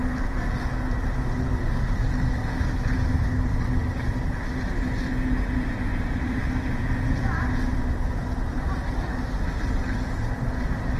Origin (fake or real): real